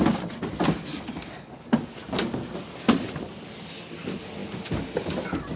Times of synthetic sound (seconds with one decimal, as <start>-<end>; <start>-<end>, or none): none